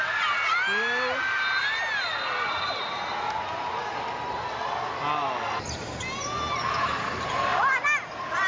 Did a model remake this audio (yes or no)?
no